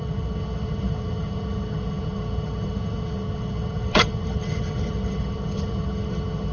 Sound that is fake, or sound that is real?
fake